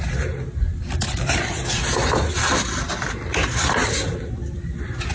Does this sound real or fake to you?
real